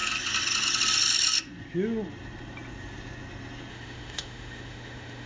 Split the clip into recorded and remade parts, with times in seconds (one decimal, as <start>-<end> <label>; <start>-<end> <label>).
0.0-3.7 recorded; 3.7-5.3 remade

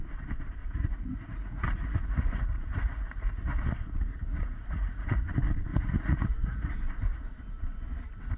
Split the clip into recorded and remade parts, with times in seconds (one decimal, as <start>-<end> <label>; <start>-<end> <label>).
0.0-0.6 recorded; 0.6-5.2 remade; 5.2-5.7 recorded; 5.7-6.7 remade; 6.7-8.4 recorded